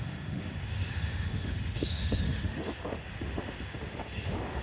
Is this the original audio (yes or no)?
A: no